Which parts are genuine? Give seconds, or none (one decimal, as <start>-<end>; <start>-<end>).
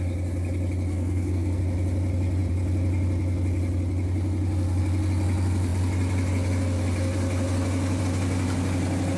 0.0-0.9; 1.6-9.2